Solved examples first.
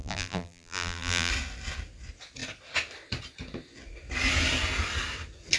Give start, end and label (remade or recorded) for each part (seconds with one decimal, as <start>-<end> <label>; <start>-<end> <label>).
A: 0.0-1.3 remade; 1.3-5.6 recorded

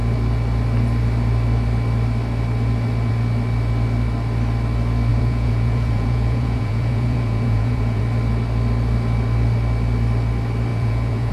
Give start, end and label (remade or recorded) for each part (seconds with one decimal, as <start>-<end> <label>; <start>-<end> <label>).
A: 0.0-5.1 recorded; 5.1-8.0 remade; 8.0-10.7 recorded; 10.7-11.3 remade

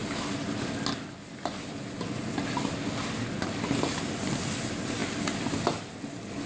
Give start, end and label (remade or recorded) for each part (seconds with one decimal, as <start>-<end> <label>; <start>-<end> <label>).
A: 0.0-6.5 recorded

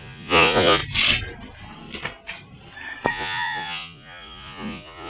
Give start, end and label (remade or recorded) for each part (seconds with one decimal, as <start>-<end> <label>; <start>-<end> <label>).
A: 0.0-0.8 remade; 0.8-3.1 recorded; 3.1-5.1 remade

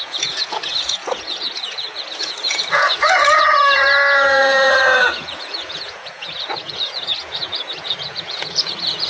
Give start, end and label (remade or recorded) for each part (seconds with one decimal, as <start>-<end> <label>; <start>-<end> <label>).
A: 0.0-9.1 remade